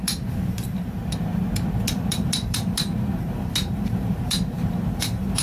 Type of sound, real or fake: fake